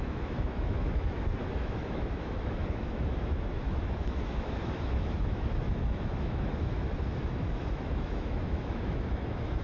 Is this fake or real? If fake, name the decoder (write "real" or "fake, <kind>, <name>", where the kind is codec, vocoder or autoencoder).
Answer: fake, autoencoder, DAC-VAE